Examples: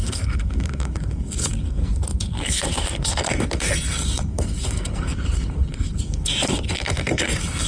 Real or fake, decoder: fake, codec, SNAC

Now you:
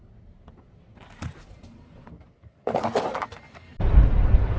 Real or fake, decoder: real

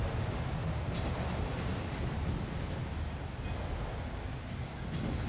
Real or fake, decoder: real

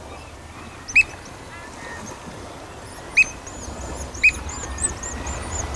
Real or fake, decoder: real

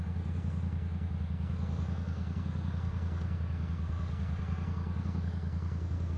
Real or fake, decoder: fake, codec, SNAC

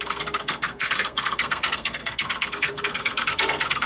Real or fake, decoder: fake, codec, SNAC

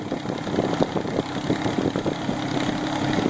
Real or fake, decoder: real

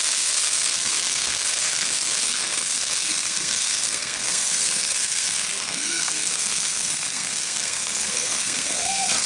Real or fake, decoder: fake, codec, SNAC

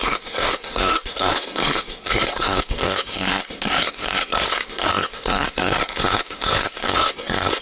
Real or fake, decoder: fake, codec, SNAC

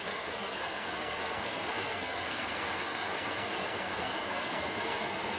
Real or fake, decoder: fake, codec, SNAC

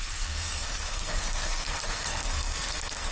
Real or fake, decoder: fake, codec, SNAC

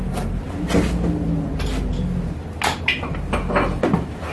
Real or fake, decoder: real